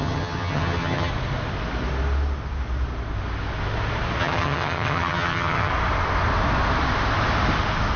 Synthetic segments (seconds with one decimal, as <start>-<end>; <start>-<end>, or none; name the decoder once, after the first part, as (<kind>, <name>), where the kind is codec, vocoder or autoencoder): 0.0-1.1 (vocoder, HiFi-GAN); 4.2-5.7